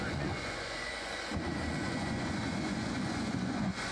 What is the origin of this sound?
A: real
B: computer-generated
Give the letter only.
B